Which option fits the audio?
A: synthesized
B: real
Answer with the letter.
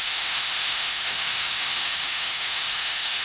A